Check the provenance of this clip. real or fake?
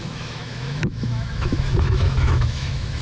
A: fake